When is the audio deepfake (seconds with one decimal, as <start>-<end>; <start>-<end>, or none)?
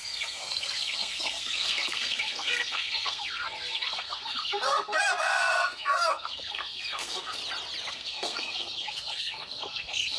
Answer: 0.0-7.4; 7.9-10.2